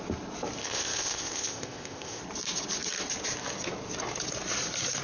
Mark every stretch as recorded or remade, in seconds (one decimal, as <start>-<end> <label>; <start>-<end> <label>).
0.0-0.6 recorded; 0.6-2.2 remade; 2.2-5.0 recorded